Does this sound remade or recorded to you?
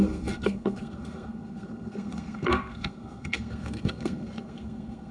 remade